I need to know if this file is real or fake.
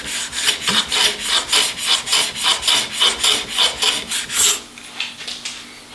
real